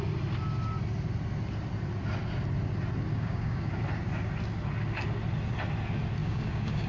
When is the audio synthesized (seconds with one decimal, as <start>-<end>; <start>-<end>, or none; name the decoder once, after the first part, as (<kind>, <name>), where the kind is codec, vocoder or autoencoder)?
3.1-3.8 (codec, DAC); 6.2-6.9